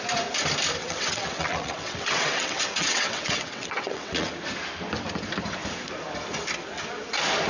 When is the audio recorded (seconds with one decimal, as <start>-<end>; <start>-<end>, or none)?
0.0-0.8; 4.3-7.5